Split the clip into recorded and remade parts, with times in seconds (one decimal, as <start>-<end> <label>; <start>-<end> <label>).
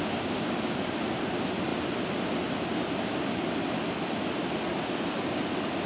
0.0-5.9 recorded